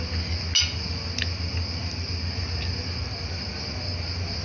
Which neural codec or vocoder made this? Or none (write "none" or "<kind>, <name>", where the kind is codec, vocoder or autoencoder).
none